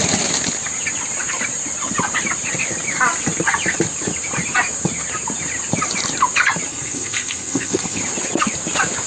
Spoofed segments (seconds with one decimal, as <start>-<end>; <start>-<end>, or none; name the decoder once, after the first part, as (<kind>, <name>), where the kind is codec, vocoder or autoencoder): 6.7-8.0 (codec, SNAC)